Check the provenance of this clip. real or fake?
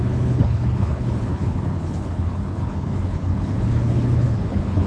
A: fake